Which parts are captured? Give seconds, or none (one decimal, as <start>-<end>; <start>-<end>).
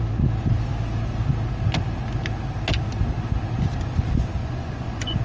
0.0-4.4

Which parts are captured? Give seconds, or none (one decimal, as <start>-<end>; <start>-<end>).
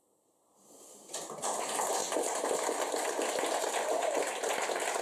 0.0-5.0